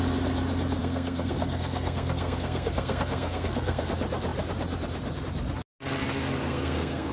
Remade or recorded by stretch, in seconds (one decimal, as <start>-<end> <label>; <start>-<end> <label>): 0.0-0.8 recorded; 0.8-3.9 remade; 3.9-6.0 recorded; 6.0-7.1 remade